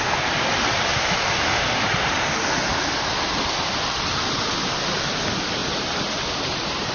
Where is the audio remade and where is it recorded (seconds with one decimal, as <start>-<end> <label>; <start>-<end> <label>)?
0.0-0.9 recorded; 0.9-2.3 remade; 2.3-5.6 recorded; 5.6-6.9 remade